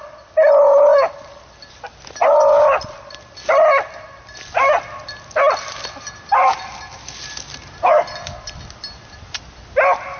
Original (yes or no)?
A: yes